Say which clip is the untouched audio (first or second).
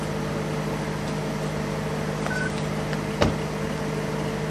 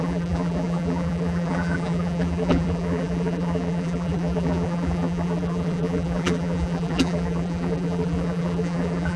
first